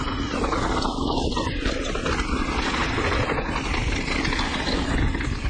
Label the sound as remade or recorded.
recorded